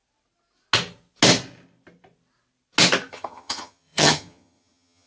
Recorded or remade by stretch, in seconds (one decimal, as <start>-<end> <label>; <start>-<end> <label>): 0.0-3.1 recorded; 3.1-5.1 remade